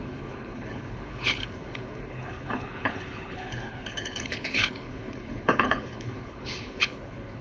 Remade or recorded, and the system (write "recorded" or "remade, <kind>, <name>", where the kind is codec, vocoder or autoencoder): remade, codec, HILCodec